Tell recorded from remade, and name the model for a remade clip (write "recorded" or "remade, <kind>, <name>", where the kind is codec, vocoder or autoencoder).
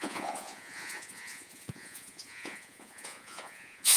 remade, vocoder, Vocos